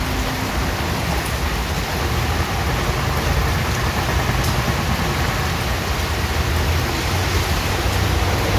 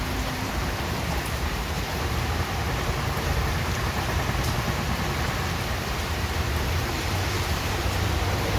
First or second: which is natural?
first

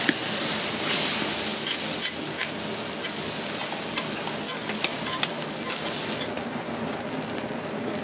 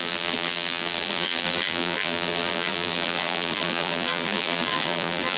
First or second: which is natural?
first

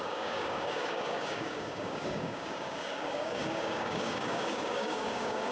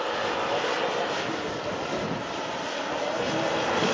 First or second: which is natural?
second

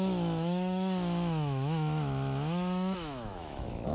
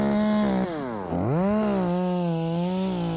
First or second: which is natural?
second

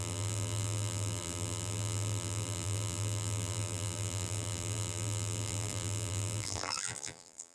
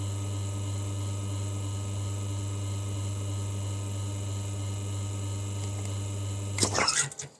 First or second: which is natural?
second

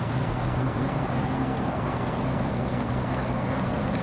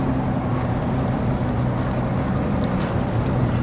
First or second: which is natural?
second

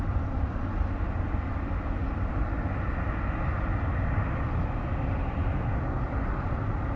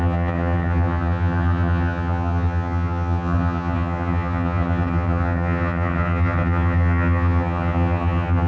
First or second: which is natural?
first